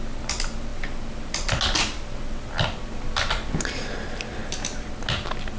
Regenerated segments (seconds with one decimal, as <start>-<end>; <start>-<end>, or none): none